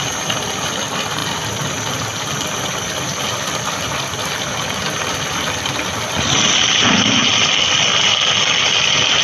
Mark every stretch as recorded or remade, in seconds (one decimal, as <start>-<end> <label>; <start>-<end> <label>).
0.0-1.2 remade; 1.2-1.9 recorded; 1.9-7.2 remade; 7.2-9.2 recorded